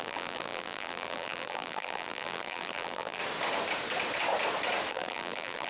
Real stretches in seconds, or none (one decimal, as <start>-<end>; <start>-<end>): 3.2-4.9